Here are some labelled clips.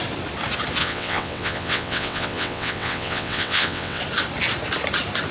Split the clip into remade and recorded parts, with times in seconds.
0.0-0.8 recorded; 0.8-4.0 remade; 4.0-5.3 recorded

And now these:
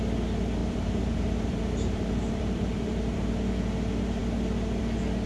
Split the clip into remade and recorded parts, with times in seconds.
0.0-0.6 recorded; 0.6-3.3 remade; 3.3-5.3 recorded

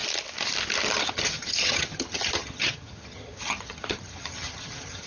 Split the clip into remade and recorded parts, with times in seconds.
0.0-1.0 recorded; 1.0-5.1 remade

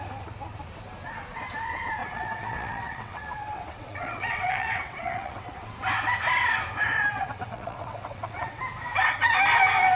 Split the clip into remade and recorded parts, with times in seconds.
0.0-2.0 recorded; 2.0-5.7 remade; 5.7-7.1 recorded; 7.1-8.6 remade; 8.6-10.0 recorded